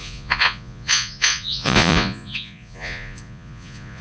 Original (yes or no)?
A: no